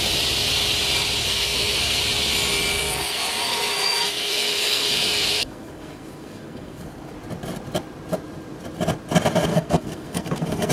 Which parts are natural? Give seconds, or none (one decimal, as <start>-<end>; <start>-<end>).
0.0-1.2; 2.0-2.7; 7.1-9.5